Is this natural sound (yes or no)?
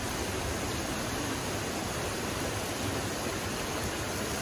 yes